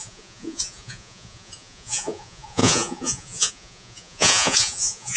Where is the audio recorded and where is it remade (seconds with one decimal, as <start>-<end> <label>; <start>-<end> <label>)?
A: 0.0-5.2 remade